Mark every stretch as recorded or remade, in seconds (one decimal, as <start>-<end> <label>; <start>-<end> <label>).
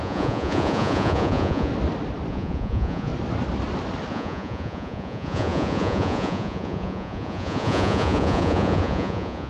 0.0-1.7 remade; 1.7-2.3 recorded; 2.3-3.1 remade; 3.1-4.1 recorded; 4.1-9.5 remade